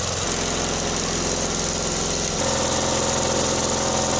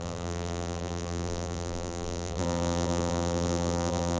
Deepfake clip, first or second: second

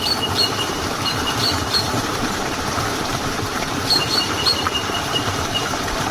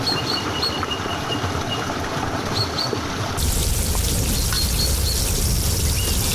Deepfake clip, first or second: first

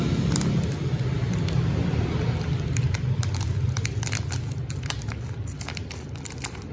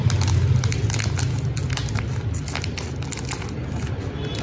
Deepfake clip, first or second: first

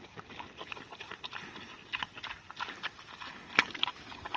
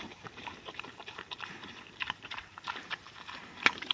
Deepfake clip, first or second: second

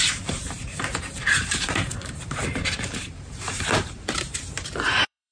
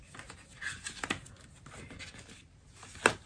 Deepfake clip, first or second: first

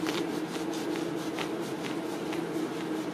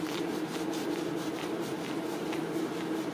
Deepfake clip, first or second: second